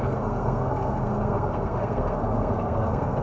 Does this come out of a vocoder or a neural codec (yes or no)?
yes